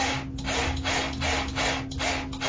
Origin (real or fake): real